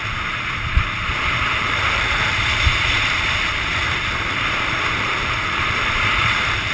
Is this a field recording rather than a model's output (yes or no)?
no